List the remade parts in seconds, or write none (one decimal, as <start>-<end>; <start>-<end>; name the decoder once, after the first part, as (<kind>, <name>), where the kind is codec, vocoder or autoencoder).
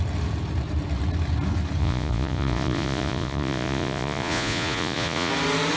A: 1.8-5.3 (vocoder, Vocos)